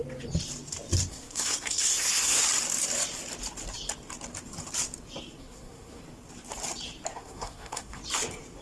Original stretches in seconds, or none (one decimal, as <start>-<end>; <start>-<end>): 0.0-1.1; 2.4-5.4; 6.0-7.1; 8.0-8.6